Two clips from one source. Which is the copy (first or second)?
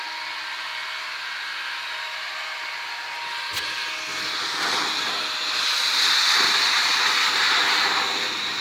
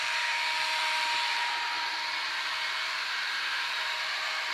second